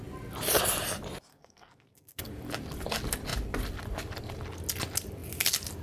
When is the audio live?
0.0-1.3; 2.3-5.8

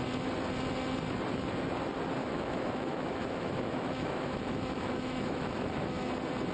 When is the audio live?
0.0-2.2; 6.1-6.5

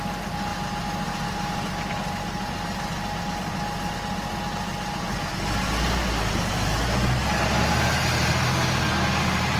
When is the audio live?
0.0-9.6

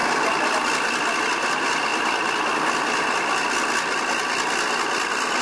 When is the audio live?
0.0-5.4

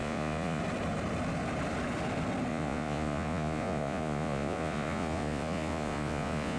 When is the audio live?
0.6-2.5